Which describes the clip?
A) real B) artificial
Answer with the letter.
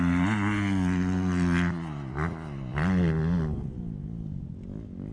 A